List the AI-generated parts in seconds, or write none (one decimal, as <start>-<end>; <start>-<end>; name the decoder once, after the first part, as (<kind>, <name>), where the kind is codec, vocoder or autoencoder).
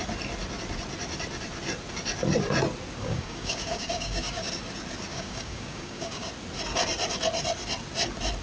3.0-4.5 (codec, DAC); 5.1-6.3